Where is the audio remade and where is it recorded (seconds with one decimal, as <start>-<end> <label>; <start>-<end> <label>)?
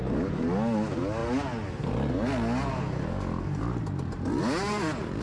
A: 0.0-5.2 recorded